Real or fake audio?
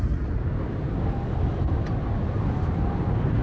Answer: real